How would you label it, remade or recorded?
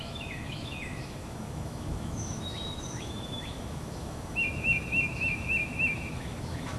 remade